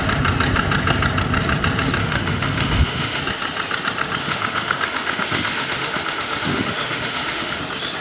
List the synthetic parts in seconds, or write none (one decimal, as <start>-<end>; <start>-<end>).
2.0-3.2; 4.2-7.6